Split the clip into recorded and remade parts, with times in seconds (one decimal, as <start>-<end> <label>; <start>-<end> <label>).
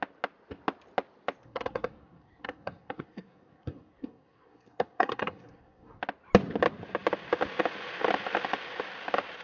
0.0-1.4 recorded; 1.4-6.0 remade; 6.0-9.4 recorded